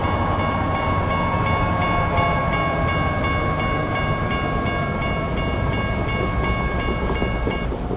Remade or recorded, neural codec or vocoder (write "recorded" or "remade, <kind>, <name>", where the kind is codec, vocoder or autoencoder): recorded